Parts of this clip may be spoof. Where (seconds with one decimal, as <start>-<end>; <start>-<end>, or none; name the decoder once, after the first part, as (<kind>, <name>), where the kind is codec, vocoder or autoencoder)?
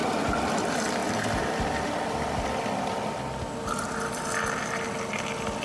none